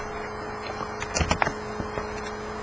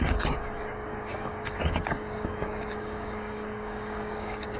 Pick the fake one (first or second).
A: second